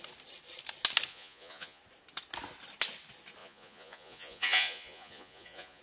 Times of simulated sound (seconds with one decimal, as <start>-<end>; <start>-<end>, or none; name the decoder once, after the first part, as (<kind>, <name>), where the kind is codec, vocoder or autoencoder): 1.1-1.8 (vocoder, Vocos); 3.4-5.8